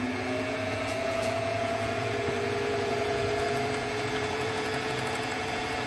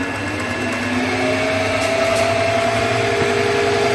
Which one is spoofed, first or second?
first